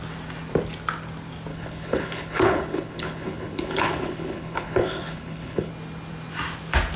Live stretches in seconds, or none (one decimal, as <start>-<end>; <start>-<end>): 0.0-1.5; 5.7-7.0

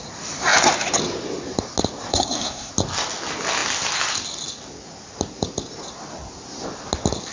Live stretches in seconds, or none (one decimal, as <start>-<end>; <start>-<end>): 0.0-2.1; 2.7-7.3

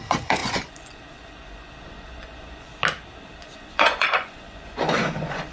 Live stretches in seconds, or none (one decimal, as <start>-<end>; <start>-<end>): 2.7-3.4

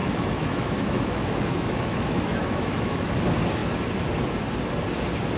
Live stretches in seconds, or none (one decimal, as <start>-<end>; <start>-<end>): 3.2-5.4

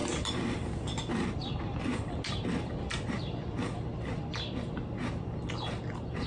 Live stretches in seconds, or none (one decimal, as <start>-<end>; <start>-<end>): 0.0-6.3

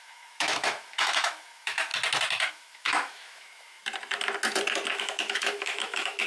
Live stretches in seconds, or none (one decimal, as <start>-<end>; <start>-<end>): 1.9-2.5; 3.8-4.9

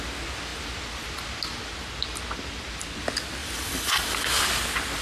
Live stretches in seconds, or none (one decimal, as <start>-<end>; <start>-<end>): 0.0-3.4; 4.4-5.0

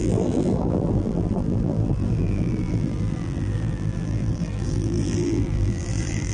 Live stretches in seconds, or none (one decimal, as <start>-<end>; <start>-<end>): none